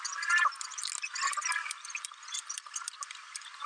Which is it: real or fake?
real